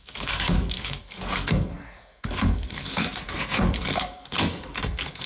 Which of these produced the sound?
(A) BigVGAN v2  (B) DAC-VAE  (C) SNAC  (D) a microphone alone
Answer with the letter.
C